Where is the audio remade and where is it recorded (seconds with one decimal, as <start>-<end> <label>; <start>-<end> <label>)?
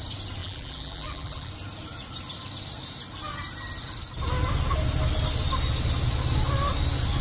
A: 0.0-0.4 recorded; 0.4-1.5 remade; 1.5-7.2 recorded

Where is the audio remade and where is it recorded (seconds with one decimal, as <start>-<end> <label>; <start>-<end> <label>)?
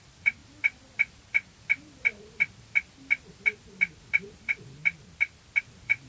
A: 0.0-0.4 remade; 0.4-4.1 recorded; 4.1-4.8 remade; 4.8-5.6 recorded; 5.6-6.1 remade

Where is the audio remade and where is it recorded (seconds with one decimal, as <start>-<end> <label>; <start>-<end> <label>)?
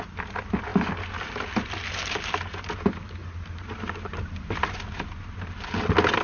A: 0.0-3.2 recorded; 3.2-5.0 remade; 5.0-6.2 recorded